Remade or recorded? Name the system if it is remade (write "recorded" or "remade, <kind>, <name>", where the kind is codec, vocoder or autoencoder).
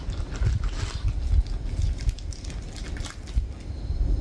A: recorded